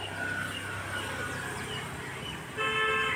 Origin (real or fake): real